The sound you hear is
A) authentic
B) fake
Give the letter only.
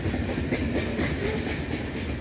A